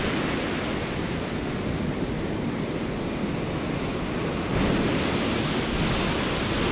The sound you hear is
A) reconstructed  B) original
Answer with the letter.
B